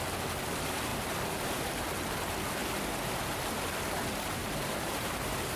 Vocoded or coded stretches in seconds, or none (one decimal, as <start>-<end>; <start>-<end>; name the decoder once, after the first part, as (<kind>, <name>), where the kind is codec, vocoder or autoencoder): 0.9-1.8 (vocoder, BigVGAN v2); 4.4-5.6